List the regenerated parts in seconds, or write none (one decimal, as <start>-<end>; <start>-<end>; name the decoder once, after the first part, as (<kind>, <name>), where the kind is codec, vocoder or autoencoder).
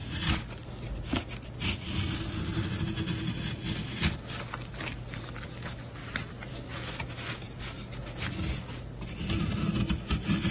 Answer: none